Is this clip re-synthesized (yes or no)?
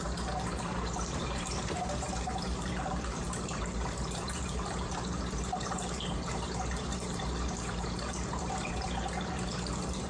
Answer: yes